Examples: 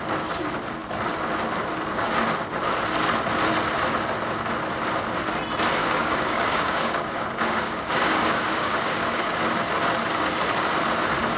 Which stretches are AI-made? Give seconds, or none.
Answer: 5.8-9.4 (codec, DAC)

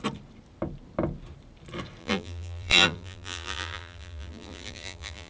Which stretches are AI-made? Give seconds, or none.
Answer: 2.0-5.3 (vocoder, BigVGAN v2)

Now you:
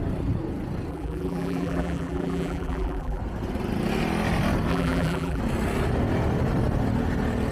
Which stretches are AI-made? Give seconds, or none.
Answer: 0.9-3.2 (vocoder, BigVGAN v2); 4.7-5.4